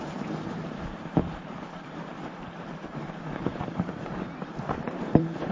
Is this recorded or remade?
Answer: remade